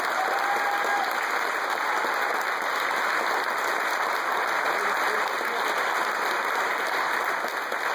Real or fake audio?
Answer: real